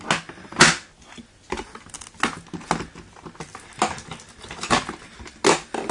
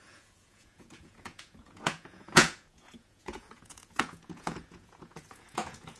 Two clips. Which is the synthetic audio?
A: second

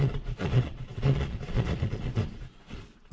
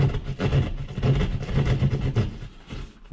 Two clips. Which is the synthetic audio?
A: first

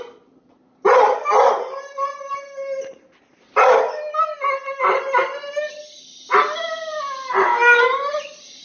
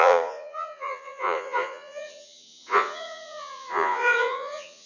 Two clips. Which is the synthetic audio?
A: second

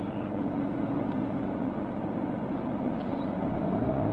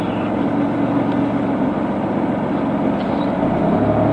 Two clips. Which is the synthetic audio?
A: first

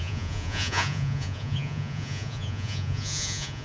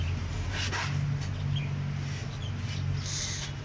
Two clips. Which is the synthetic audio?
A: first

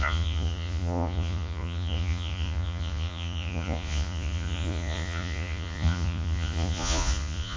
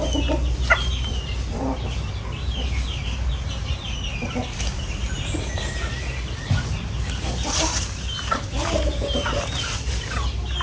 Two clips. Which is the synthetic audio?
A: first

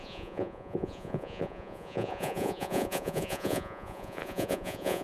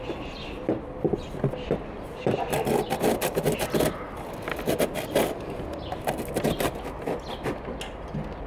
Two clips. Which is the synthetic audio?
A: first